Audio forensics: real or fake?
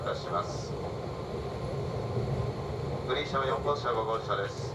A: real